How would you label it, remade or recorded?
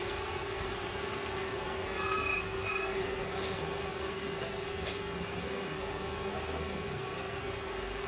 remade